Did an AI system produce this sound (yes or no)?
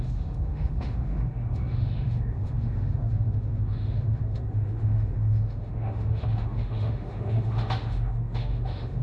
yes